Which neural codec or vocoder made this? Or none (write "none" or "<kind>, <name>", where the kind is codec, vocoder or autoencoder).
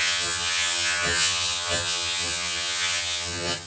vocoder, HiFi-GAN